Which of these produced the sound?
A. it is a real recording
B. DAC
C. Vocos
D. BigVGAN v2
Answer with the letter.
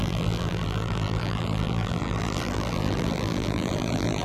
D